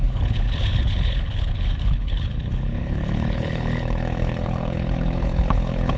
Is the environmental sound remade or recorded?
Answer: remade